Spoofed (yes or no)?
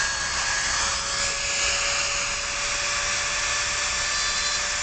no